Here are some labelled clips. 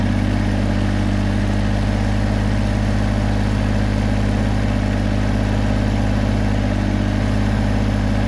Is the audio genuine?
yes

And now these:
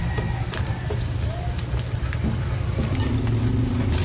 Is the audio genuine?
yes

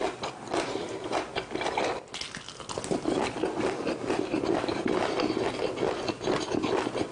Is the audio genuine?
yes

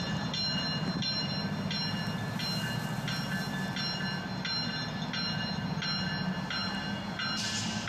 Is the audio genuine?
yes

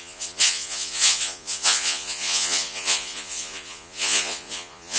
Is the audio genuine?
no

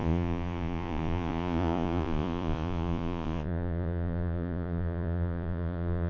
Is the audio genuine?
no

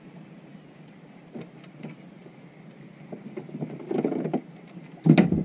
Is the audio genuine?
yes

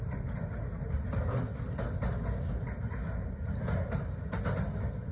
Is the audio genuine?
yes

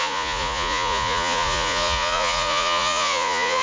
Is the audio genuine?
no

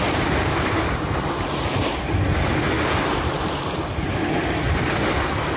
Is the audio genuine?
yes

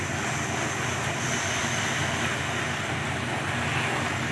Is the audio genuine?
yes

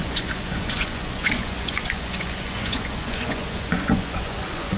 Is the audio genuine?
no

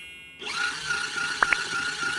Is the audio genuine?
yes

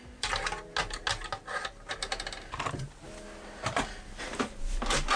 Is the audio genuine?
yes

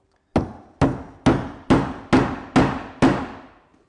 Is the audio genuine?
yes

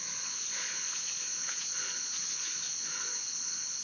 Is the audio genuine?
no